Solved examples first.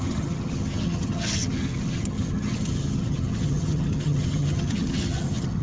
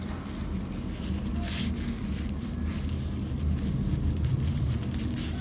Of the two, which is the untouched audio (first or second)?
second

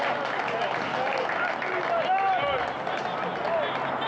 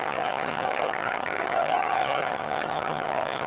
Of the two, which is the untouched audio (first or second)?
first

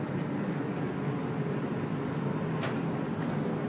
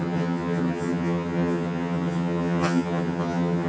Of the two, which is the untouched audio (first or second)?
first